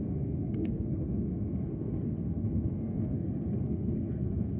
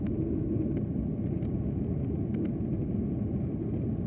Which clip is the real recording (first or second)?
second